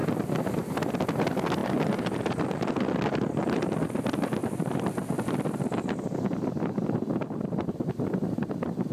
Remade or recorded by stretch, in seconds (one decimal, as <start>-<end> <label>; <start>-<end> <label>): 0.0-0.9 remade; 0.9-1.6 recorded; 1.6-2.8 remade; 2.8-4.4 recorded; 4.4-5.7 remade; 5.7-8.9 recorded